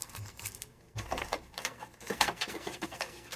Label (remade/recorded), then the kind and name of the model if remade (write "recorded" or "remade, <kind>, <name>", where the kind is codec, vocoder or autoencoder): remade, codec, SNAC